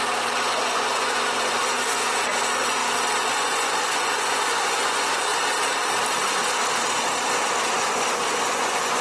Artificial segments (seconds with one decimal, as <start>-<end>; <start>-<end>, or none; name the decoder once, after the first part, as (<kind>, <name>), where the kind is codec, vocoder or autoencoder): 0.5-2.8 (vocoder, Vocos); 3.3-5.3; 7.8-9.0